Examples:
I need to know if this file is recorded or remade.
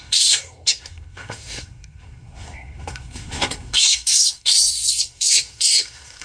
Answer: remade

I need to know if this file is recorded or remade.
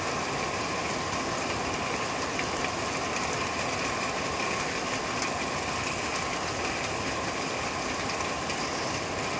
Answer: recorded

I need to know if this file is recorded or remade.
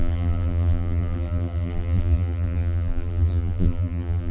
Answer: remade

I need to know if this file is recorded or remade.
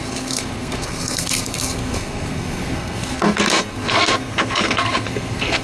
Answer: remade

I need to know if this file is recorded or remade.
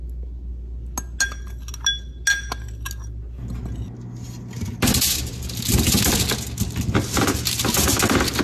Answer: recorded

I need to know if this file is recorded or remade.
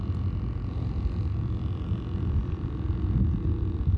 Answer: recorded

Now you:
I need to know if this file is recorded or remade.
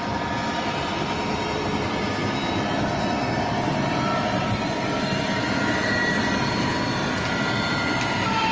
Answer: recorded